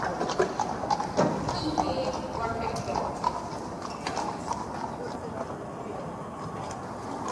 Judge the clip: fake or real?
real